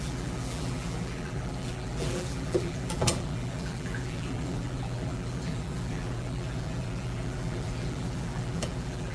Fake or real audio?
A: fake